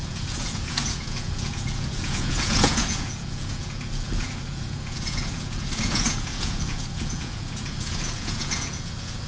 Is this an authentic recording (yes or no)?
no